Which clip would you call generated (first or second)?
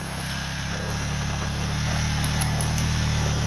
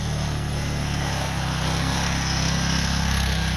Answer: second